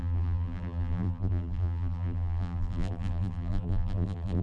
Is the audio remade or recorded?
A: remade